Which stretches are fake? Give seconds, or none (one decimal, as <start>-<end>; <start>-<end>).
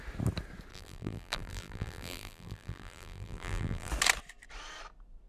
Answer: 0.7-3.9